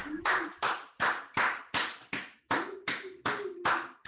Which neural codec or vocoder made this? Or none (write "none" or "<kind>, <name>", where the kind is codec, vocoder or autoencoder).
none